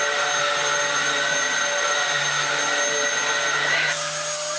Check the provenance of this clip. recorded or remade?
recorded